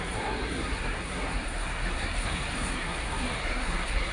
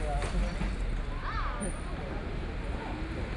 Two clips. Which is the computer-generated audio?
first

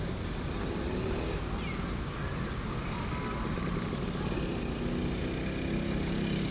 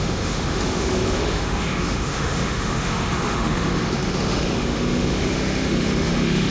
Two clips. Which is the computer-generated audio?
second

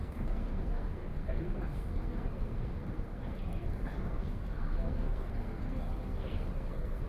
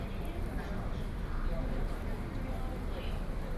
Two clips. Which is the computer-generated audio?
first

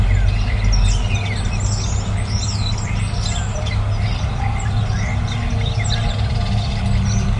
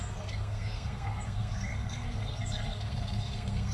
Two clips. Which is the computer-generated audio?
second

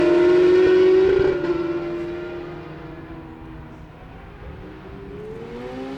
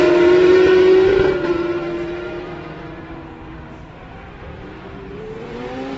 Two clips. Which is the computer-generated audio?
second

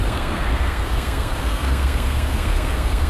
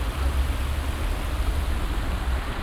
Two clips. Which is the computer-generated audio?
first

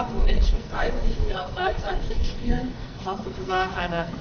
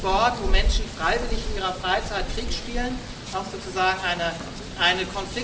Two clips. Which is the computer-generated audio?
first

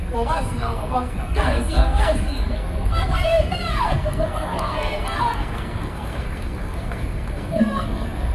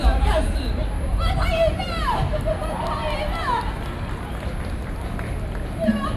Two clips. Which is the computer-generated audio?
first